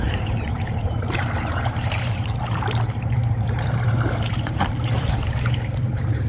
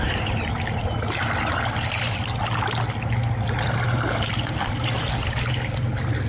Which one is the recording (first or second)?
second